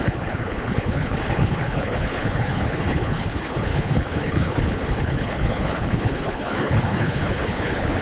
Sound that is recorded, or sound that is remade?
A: remade